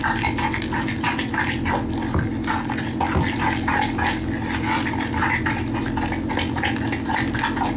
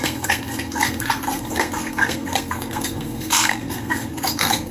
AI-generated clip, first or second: second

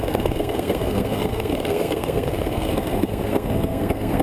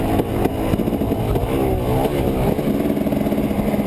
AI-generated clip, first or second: first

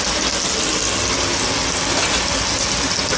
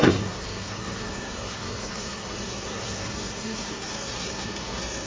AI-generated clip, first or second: second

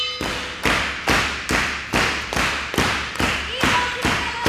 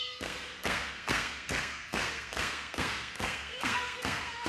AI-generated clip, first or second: second